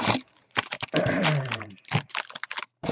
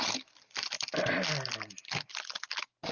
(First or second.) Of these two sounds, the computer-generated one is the first